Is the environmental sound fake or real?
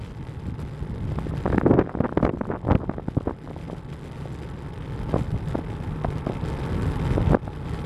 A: real